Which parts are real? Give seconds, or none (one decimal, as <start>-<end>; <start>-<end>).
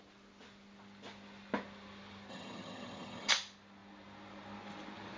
0.0-2.3; 3.3-5.2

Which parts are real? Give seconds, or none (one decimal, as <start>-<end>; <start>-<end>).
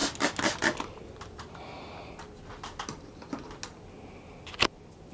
0.0-5.1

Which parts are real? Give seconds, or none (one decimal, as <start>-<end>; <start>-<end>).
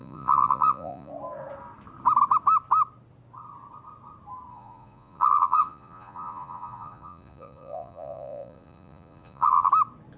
1.1-4.5; 9.7-10.2